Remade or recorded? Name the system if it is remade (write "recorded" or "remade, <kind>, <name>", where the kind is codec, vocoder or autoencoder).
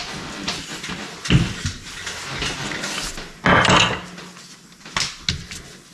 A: recorded